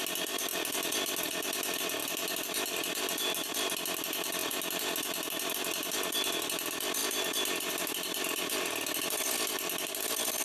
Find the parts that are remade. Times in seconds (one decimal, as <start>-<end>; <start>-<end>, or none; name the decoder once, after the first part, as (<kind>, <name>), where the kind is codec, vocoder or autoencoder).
none